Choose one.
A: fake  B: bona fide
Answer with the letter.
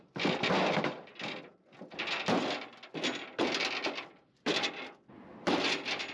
B